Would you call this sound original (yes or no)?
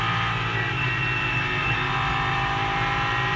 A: yes